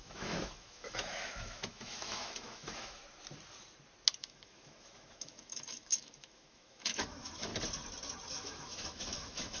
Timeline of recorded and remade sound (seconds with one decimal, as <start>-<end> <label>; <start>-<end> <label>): 0.0-3.0 remade; 3.0-4.2 recorded; 4.2-7.5 remade; 7.5-8.3 recorded; 8.3-9.6 remade